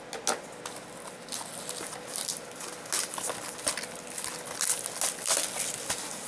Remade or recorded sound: recorded